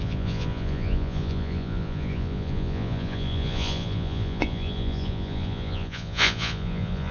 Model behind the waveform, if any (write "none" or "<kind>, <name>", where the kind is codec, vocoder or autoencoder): vocoder, Vocos